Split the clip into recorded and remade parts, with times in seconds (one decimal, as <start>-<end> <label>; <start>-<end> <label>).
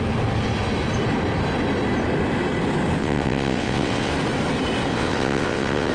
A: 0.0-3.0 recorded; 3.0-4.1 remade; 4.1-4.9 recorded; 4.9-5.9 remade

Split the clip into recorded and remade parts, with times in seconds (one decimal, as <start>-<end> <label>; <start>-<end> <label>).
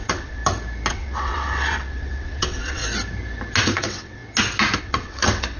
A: 0.0-0.4 remade; 0.4-0.9 recorded; 0.9-2.8 remade; 2.8-3.6 recorded; 3.6-4.2 remade; 4.2-4.8 recorded; 4.8-5.6 remade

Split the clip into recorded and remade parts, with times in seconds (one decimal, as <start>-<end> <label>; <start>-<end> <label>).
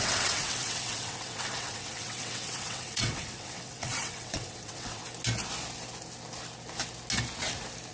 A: 0.0-5.0 remade; 5.0-7.9 recorded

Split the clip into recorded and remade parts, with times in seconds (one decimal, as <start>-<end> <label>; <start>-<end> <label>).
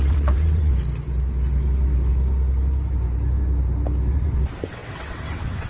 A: 0.0-0.7 remade; 0.7-4.1 recorded; 4.1-5.7 remade